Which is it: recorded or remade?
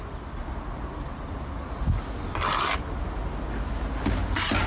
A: recorded